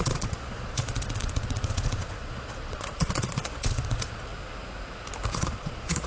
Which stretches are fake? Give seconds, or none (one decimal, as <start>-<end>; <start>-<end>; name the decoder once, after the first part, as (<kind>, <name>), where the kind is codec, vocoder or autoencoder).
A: 0.0-4.3 (vocoder, Vocos); 5.3-6.1